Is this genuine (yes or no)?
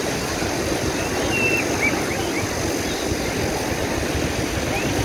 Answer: yes